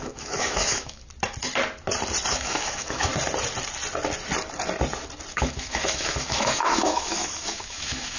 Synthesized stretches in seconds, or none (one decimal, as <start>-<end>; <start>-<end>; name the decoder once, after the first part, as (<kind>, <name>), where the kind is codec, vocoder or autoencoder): 0.0-1.0 (autoencoder, DAC-VAE); 2.3-3.1; 5.3-8.2